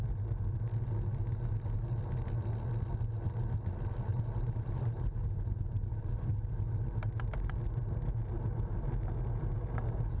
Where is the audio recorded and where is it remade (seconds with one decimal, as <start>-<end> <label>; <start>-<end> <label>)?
0.0-4.1 recorded; 4.1-6.9 remade; 6.9-10.2 recorded